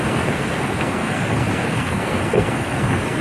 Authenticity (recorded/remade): remade